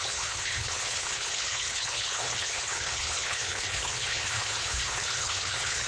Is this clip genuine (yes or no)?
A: no